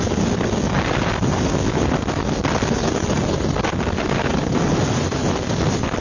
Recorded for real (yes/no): yes